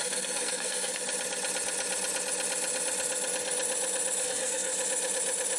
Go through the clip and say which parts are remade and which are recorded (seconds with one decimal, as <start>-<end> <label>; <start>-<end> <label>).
0.0-1.0 remade; 1.0-4.2 recorded; 4.2-4.7 remade; 4.7-5.6 recorded

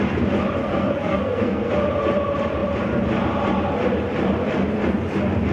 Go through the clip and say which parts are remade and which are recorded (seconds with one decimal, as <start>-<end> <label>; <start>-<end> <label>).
0.0-0.6 recorded; 0.6-1.7 remade; 1.7-5.5 recorded

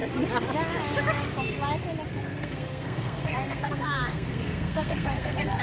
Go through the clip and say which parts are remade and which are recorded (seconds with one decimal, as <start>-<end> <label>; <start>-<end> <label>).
0.0-2.1 recorded; 2.1-5.6 remade

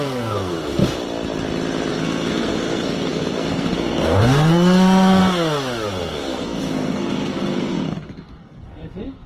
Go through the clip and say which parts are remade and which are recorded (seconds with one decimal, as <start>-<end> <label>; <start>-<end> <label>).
0.0-0.8 remade; 0.8-1.9 recorded; 1.9-5.2 remade; 5.2-5.9 recorded; 5.9-9.3 remade

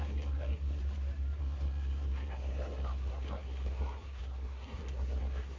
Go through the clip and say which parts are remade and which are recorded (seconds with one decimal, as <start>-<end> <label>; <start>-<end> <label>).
0.0-0.8 remade; 0.8-1.4 recorded; 1.4-5.6 remade

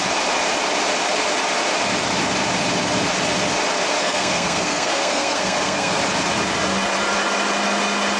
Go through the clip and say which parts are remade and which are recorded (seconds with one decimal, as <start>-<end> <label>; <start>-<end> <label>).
0.0-4.0 recorded; 4.0-6.0 remade; 6.0-8.2 recorded